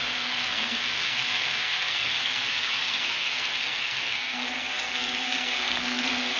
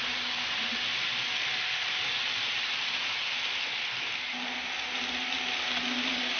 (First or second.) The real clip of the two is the second